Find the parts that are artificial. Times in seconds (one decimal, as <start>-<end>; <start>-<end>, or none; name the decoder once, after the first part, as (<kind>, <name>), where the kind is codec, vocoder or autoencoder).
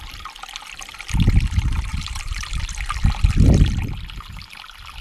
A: 1.9-2.6 (vocoder, BigVGAN v2)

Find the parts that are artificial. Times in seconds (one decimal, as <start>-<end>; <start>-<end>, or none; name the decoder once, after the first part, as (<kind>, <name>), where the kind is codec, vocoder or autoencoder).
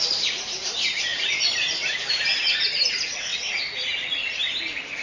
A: 0.0-3.3 (vocoder, BigVGAN v2); 4.3-5.0